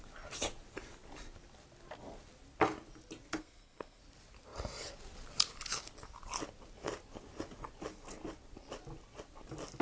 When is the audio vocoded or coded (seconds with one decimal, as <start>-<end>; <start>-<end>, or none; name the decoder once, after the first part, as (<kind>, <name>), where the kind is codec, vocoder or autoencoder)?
3.4-4.0 (codec, SNAC)